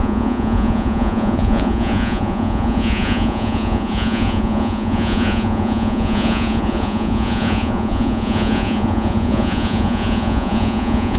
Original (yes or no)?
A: no